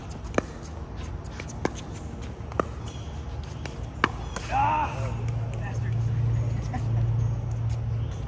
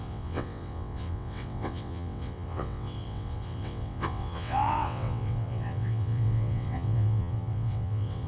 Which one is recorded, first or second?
first